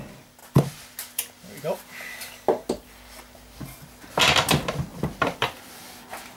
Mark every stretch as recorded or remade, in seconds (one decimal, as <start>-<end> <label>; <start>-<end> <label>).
0.0-4.9 recorded; 4.9-5.7 remade; 5.7-6.4 recorded

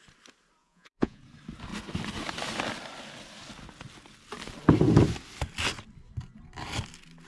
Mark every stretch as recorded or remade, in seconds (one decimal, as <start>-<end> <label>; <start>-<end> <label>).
0.0-0.6 recorded; 0.6-1.2 remade; 1.2-7.3 recorded

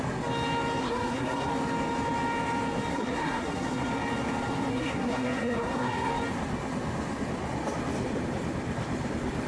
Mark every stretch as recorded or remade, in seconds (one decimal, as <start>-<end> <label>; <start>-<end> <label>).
0.0-0.8 recorded; 0.8-1.5 remade; 1.5-2.9 recorded; 2.9-3.9 remade; 3.9-4.7 recorded; 4.7-6.1 remade; 6.1-9.5 recorded

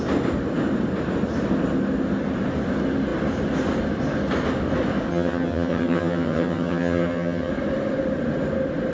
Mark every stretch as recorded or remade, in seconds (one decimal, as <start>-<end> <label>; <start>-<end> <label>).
0.0-5.1 recorded; 5.1-7.5 remade; 7.5-8.9 recorded

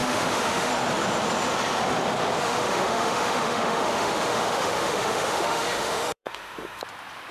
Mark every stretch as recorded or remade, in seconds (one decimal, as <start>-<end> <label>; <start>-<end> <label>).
0.0-0.7 remade; 0.7-2.4 recorded; 2.4-6.8 remade; 6.8-7.3 recorded

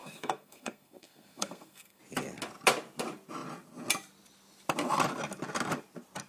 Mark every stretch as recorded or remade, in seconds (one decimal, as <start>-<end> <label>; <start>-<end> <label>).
0.0-2.0 remade; 2.0-6.3 recorded

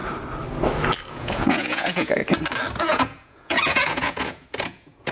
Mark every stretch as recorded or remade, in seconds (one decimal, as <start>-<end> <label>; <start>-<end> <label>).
0.0-1.1 recorded; 1.1-2.2 remade; 2.2-2.8 recorded; 2.8-5.1 remade